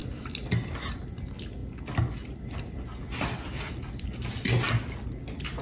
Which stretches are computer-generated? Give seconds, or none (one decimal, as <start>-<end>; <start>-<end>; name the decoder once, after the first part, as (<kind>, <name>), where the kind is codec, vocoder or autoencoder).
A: none